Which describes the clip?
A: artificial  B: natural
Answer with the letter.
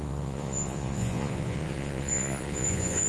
A